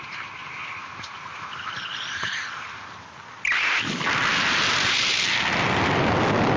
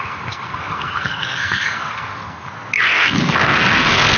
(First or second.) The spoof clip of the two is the second